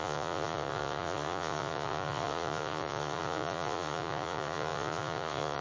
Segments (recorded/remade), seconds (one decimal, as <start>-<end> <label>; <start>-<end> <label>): 0.0-5.6 remade